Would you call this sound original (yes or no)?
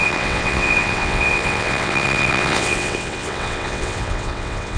no